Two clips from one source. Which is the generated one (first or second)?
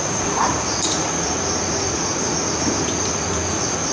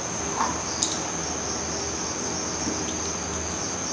first